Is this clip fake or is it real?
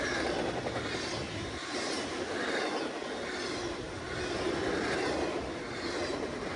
real